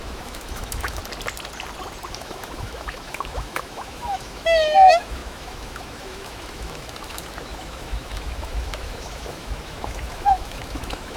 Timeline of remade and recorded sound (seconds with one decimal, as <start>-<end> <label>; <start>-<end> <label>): 0.0-1.0 remade; 1.0-2.1 recorded; 2.1-11.2 remade